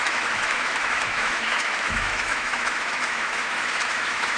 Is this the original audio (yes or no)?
no